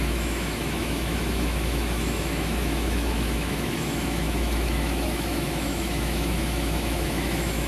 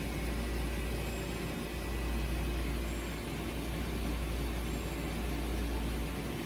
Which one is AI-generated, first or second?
first